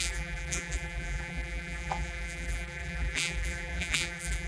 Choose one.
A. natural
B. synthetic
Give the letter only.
B